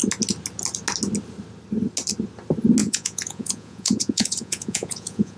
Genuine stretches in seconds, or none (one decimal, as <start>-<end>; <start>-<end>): 0.0-2.8